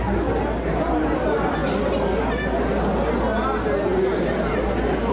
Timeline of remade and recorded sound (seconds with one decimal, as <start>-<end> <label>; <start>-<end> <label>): 0.0-5.1 recorded